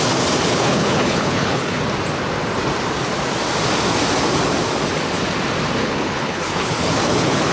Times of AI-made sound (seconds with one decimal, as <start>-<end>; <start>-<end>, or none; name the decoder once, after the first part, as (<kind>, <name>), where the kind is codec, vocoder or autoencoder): 0.5-1.8 (codec, HILCodec); 5.8-7.5